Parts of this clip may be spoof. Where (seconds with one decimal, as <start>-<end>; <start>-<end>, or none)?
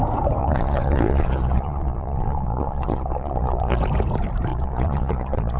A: 0.4-3.8; 4.5-5.6